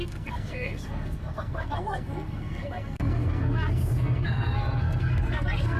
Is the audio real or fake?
fake